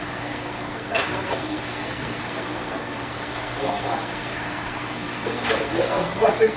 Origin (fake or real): fake